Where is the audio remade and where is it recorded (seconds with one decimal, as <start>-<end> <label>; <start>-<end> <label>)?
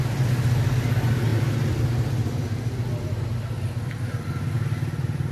0.0-5.3 recorded